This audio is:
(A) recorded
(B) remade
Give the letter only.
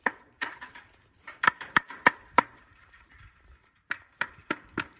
B